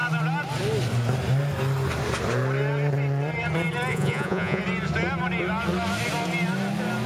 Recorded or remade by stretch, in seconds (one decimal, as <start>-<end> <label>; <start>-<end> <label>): 0.0-3.9 recorded; 3.9-4.6 remade; 4.6-7.1 recorded

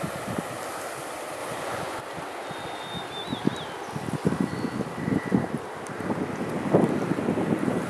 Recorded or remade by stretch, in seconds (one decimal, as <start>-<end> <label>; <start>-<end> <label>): 0.0-1.4 recorded; 1.4-2.0 remade; 2.0-7.9 recorded

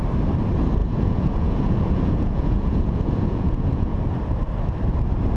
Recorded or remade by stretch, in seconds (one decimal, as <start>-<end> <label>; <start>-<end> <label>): 0.0-0.8 recorded; 0.8-4.0 remade; 4.0-5.4 recorded

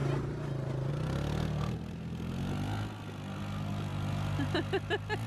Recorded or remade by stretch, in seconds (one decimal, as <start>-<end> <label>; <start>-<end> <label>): 0.0-5.3 recorded